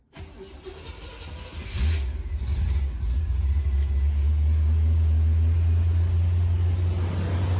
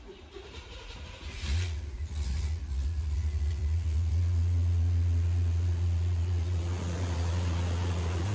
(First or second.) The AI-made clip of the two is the second